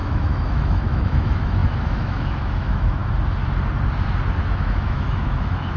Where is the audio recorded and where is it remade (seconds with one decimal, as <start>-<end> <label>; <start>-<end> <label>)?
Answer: 0.0-3.0 remade; 3.0-4.4 recorded; 4.4-5.8 remade